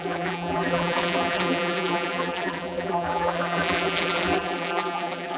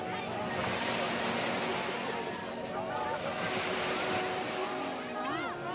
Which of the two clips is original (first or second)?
second